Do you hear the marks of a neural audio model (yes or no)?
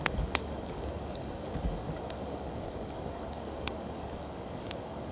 yes